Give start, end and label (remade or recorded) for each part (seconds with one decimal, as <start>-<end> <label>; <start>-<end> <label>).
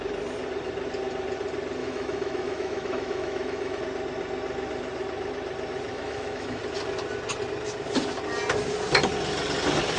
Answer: 0.0-1.8 recorded; 1.8-3.8 remade; 3.8-5.9 recorded; 5.9-6.6 remade; 6.6-10.0 recorded